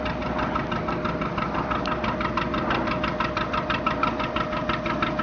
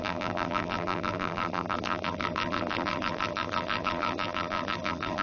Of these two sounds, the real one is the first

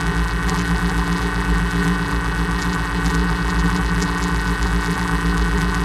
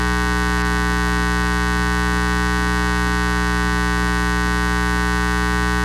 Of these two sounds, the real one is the second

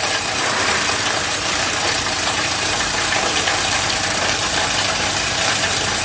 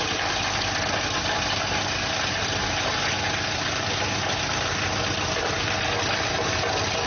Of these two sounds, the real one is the second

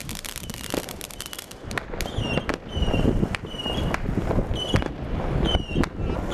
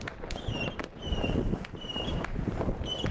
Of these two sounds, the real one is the first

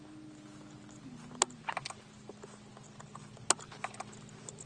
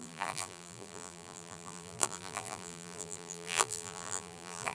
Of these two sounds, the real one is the first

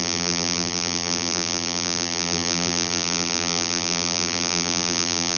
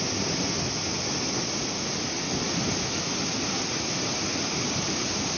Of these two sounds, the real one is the second